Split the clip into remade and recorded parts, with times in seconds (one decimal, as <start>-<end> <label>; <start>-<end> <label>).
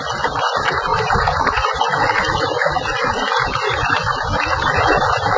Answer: 0.0-0.9 recorded; 0.9-1.8 remade; 1.8-5.4 recorded